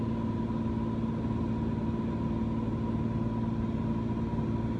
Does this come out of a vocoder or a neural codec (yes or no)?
no